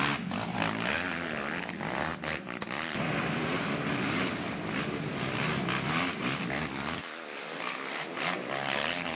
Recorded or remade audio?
recorded